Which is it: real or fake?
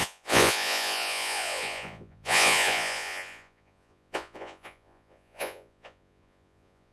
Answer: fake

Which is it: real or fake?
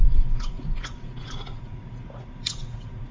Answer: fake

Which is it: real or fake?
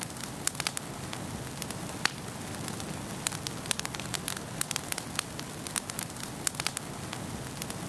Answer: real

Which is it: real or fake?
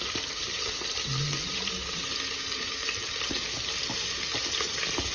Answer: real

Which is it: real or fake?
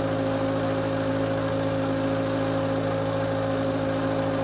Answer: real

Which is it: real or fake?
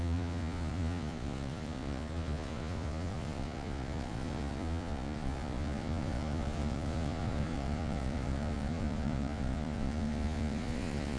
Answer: fake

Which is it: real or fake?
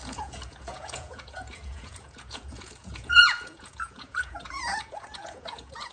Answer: fake